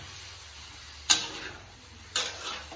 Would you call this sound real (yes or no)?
yes